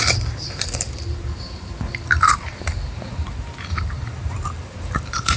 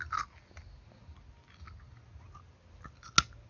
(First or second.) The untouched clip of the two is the second